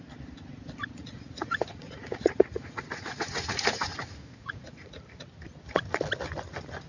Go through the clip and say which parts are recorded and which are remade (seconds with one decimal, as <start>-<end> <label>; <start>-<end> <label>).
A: 0.0-1.0 recorded; 1.0-5.0 remade; 5.0-6.9 recorded